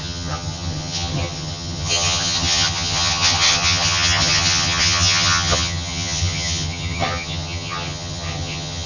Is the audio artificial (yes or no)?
yes